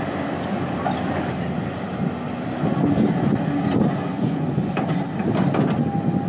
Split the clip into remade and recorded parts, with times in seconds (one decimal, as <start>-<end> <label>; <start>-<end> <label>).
0.0-4.1 recorded; 4.1-4.7 remade; 4.7-6.3 recorded